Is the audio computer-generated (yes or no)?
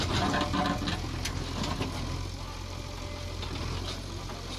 no